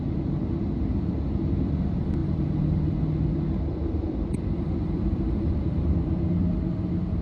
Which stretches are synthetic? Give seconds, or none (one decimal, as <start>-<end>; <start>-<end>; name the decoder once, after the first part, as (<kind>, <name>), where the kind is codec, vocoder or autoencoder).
2.2-2.9 (vocoder, BigVGAN v2); 3.8-6.1